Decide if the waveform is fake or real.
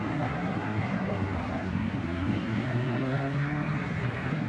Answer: fake